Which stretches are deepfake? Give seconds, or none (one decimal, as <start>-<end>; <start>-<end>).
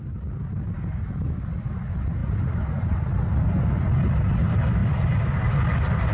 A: none